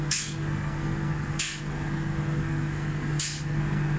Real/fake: fake